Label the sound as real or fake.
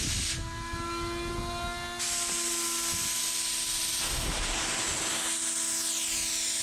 real